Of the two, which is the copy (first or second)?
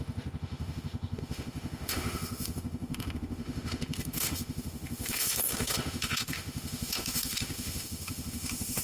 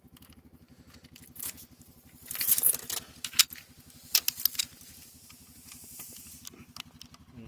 first